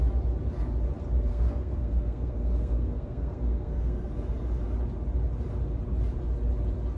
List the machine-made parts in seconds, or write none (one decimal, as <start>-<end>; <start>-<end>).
1.3-4.1